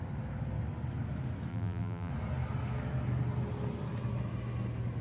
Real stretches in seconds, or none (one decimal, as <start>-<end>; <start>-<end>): 0.0-1.5; 2.1-5.0